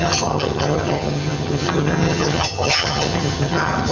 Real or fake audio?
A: fake